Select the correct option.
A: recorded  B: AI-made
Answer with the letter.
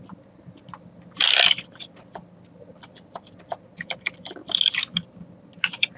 A